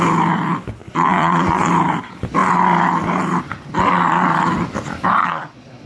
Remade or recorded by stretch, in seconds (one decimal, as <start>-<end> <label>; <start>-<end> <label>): 0.0-0.8 recorded; 0.8-1.7 remade; 1.7-5.2 recorded; 5.2-5.9 remade